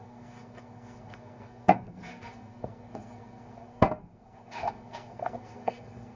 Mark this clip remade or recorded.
remade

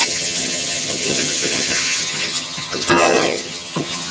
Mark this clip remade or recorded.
remade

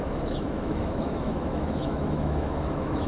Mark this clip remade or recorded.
remade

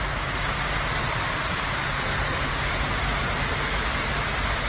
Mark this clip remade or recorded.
recorded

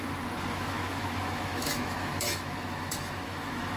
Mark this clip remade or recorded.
remade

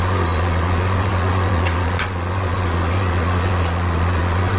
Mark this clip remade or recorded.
remade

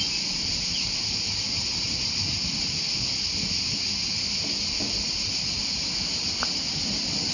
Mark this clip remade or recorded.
recorded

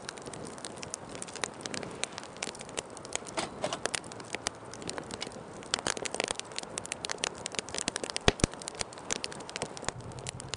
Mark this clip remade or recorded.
remade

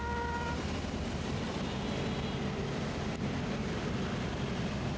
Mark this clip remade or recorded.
recorded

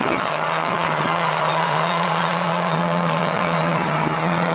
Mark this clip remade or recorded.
remade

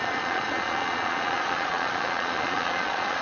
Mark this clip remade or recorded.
remade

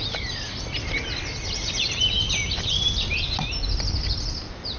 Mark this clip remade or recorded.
recorded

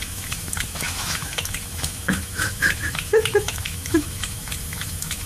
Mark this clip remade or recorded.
remade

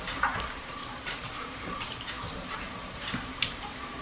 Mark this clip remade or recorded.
remade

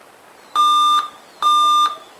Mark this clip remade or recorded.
recorded